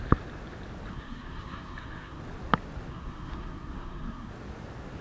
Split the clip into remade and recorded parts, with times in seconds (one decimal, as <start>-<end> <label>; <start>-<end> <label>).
0.0-0.9 recorded; 0.9-2.2 remade; 2.2-2.9 recorded; 2.9-4.3 remade; 4.3-5.0 recorded